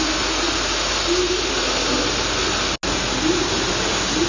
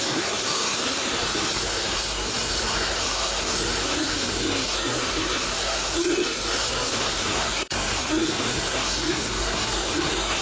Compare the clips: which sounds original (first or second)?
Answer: first